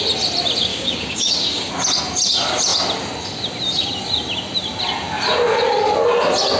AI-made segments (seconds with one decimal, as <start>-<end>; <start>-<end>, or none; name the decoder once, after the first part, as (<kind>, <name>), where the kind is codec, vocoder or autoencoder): 0.7-1.7 (codec, DAC)